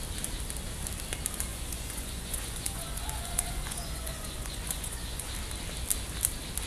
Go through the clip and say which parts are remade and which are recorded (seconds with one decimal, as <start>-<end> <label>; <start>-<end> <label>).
0.0-1.5 recorded; 1.5-5.3 remade; 5.3-6.7 recorded